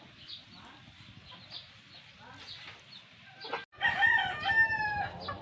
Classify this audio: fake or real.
real